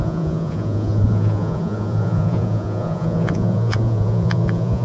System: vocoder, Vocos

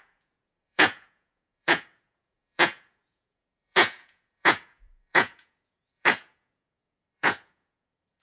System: vocoder, Vocos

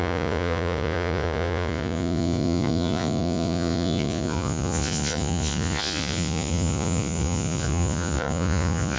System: vocoder, Vocos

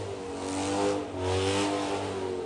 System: none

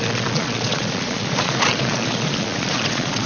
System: vocoder, Vocos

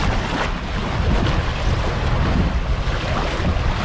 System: none